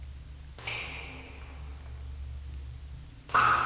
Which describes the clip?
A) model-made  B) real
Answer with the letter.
B